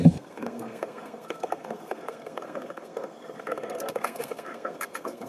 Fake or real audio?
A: fake